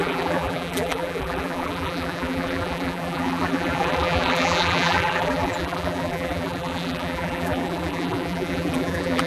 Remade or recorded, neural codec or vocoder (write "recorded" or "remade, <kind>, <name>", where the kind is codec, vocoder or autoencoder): remade, vocoder, BigVGAN v2